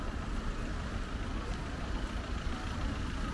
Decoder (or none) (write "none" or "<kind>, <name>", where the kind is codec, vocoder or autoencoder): none